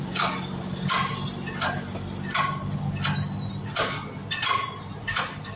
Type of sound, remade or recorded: recorded